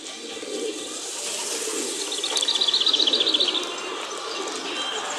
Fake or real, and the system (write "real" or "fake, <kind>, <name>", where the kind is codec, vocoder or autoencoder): real